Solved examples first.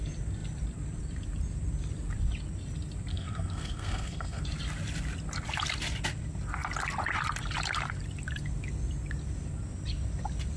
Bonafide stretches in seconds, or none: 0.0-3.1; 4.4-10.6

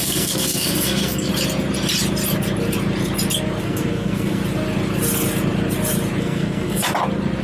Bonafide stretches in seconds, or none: 1.3-3.6; 4.4-6.2; 6.8-7.4

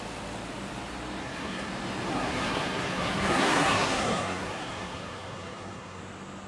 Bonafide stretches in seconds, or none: 0.0-1.2; 1.7-2.1; 6.0-6.5

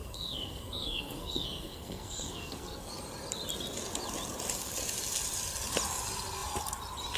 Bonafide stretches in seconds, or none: 2.9-7.2

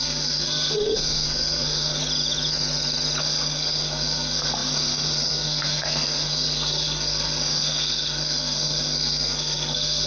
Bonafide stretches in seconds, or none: 2.0-3.2